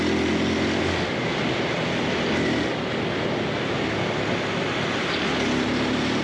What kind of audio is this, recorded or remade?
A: recorded